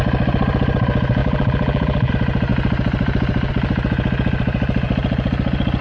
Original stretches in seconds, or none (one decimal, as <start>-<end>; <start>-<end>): 0.0-1.2; 2.1-5.8